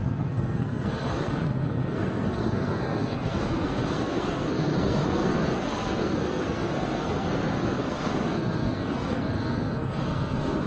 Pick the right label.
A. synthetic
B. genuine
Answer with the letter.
A